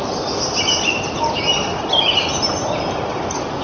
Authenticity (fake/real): real